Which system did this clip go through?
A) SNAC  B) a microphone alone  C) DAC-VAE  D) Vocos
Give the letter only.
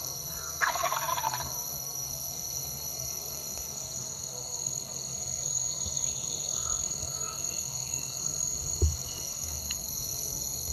A